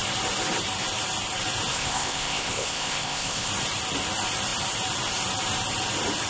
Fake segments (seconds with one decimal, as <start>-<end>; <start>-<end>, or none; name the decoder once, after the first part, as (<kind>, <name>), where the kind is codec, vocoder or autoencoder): 1.7-3.5 (codec, ZipCodec)